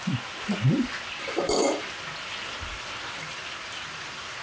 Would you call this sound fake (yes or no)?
no